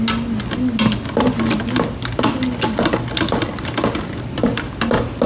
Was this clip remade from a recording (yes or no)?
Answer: no